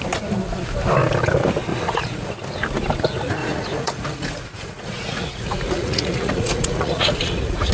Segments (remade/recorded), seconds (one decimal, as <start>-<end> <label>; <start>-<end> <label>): 0.0-1.7 recorded; 1.7-2.3 remade; 2.3-3.4 recorded; 3.4-7.7 remade